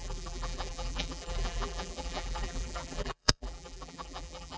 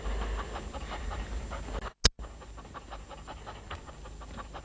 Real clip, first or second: second